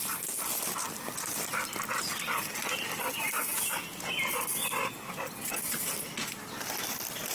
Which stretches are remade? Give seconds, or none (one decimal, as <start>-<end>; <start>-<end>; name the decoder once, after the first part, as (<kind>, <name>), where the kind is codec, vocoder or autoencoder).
none